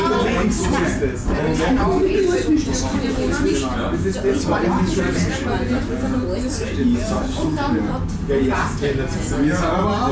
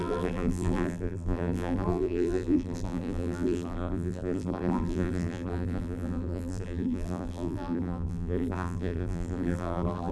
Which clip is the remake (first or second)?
second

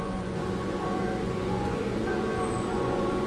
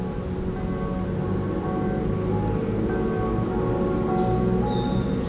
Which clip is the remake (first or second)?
first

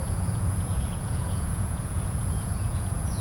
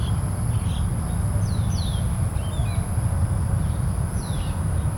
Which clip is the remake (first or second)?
first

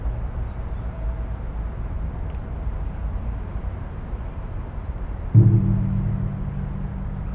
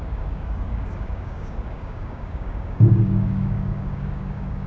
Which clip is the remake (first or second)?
second